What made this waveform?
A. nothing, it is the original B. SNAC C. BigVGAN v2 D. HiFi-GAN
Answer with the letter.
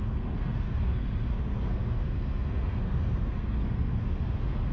B